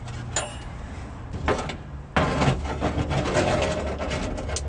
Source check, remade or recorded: recorded